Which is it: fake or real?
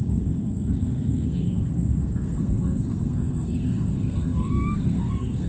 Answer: fake